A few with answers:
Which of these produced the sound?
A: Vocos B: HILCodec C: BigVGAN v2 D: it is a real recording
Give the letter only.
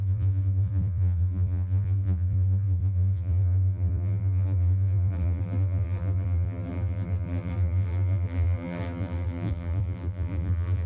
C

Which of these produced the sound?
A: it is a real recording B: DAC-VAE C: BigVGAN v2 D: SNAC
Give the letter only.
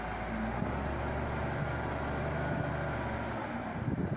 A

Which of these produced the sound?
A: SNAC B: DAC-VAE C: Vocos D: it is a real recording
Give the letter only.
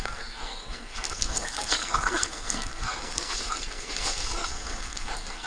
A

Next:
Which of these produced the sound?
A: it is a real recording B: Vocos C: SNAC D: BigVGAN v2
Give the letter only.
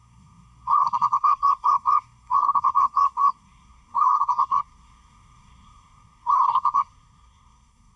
C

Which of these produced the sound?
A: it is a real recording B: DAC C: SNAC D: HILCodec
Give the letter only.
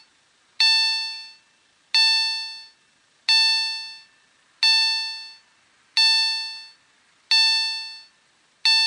A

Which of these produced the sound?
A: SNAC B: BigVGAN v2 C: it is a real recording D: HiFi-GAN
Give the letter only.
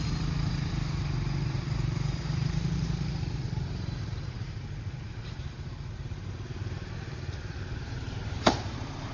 B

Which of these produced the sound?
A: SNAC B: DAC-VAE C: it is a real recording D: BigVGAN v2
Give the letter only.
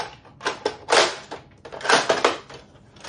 C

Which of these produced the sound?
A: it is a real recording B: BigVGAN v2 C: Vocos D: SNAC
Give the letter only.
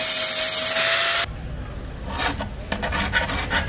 A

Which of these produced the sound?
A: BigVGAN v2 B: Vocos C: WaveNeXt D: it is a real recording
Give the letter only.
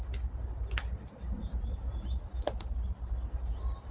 D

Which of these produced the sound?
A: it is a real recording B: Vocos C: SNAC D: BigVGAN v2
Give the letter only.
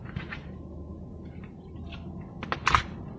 A